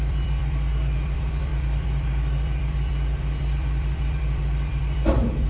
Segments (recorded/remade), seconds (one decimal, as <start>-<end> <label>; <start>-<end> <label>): 0.0-5.5 remade

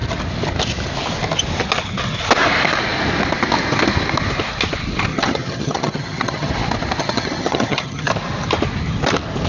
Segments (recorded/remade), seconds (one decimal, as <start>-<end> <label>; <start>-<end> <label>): 0.0-5.1 recorded; 5.1-6.5 remade; 6.5-7.0 recorded; 7.0-8.1 remade; 8.1-9.5 recorded

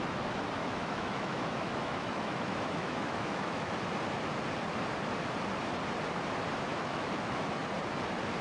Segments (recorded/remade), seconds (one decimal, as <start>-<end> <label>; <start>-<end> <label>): 0.0-0.6 recorded; 0.6-3.7 remade; 3.7-6.7 recorded; 6.7-7.6 remade; 7.6-8.4 recorded

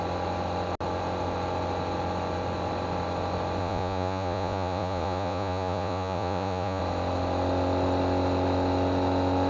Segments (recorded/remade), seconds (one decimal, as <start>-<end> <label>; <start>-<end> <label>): 0.0-3.6 recorded; 3.6-6.8 remade; 6.8-9.5 recorded

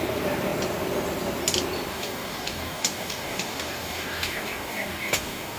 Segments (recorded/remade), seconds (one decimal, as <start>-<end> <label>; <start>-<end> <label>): 0.0-1.9 recorded; 1.9-5.6 remade